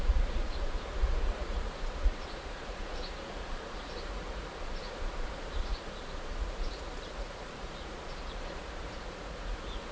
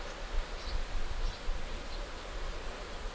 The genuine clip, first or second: second